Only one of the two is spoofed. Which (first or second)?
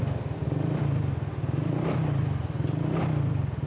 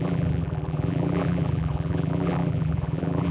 second